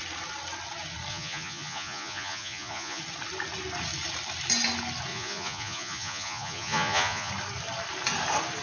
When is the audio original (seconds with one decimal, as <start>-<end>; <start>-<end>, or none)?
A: 0.0-1.1; 3.0-5.1; 7.3-8.6